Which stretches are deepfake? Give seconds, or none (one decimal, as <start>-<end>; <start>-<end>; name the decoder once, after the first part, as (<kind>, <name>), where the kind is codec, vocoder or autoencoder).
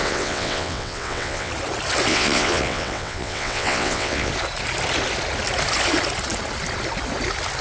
0.0-1.5 (vocoder, WaveNeXt); 2.1-4.3